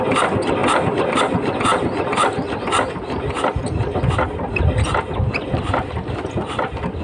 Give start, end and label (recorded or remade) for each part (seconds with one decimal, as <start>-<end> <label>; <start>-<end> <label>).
0.0-7.0 recorded